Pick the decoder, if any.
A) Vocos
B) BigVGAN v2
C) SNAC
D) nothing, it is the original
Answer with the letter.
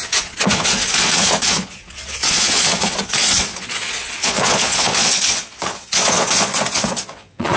A